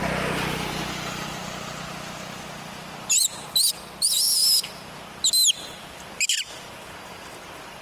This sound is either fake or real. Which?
real